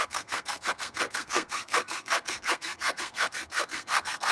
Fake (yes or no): yes